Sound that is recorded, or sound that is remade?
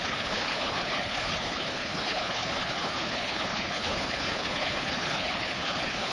remade